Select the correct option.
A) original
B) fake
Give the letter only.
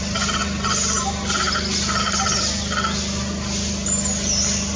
A